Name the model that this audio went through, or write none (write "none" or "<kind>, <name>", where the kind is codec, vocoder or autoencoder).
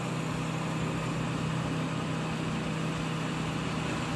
none